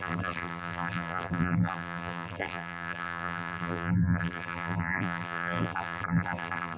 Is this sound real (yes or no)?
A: no